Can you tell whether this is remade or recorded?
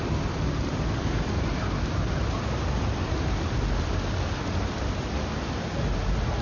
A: recorded